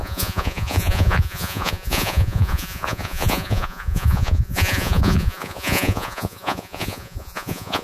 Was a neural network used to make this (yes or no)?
yes